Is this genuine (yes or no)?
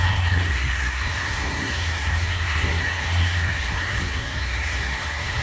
no